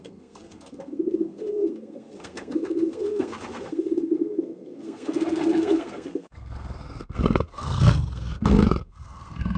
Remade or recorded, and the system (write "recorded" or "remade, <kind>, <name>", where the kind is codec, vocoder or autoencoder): remade, codec, SNAC